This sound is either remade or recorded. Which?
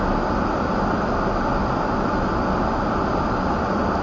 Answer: recorded